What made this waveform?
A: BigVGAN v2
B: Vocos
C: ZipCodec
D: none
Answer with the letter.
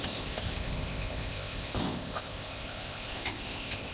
C